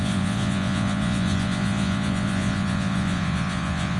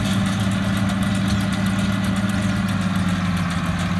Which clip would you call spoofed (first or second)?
first